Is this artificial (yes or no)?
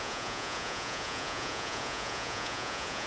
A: yes